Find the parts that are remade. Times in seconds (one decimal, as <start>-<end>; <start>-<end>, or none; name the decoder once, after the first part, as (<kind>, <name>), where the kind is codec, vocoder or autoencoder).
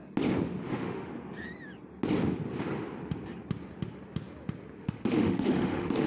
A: 0.6-1.1 (autoencoder, DAC-VAE); 4.8-6.1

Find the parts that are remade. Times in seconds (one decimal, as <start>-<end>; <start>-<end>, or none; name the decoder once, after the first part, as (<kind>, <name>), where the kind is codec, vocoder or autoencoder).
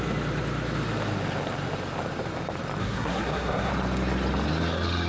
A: 2.8-3.7 (codec, SNAC)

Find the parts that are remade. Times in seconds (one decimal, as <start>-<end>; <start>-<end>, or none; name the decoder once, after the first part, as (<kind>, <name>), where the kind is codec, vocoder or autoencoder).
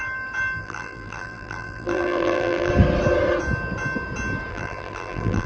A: 0.6-2.7 (vocoder, BigVGAN v2); 4.5-5.5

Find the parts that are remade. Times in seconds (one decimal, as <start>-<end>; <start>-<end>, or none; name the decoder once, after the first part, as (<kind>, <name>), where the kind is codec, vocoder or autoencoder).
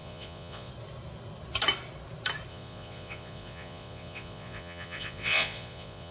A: 0.0-0.7 (vocoder, Vocos); 2.5-6.1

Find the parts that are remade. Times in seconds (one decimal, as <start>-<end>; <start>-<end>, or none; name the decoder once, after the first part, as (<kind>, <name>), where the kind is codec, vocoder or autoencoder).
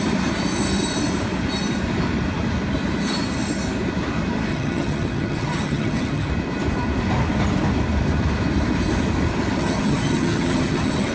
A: 4.5-6.3 (vocoder, HiFi-GAN); 9.6-11.1